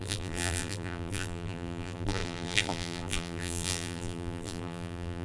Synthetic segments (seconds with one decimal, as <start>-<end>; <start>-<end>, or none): 0.0-5.2